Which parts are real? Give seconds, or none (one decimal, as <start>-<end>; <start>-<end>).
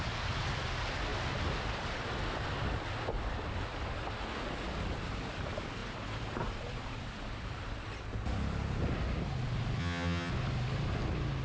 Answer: 0.0-9.8; 10.3-11.4